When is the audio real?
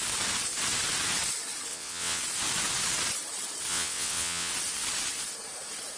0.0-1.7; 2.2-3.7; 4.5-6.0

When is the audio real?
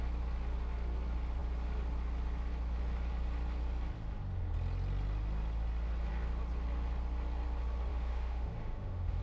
0.0-7.9